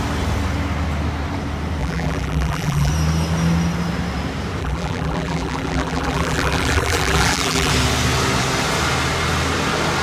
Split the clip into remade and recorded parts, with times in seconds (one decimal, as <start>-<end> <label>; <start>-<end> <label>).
0.0-1.8 recorded; 1.8-2.9 remade; 2.9-4.6 recorded; 4.6-7.7 remade; 7.7-10.0 recorded